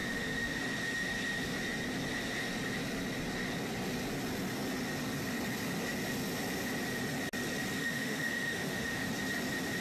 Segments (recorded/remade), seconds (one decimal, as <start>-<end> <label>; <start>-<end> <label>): 0.0-0.6 remade; 0.6-7.8 recorded; 7.8-9.1 remade; 9.1-9.8 recorded